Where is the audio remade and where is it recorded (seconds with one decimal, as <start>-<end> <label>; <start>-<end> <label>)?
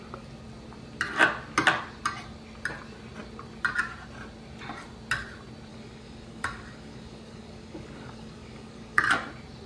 0.0-5.7 recorded; 5.7-9.0 remade; 9.0-9.7 recorded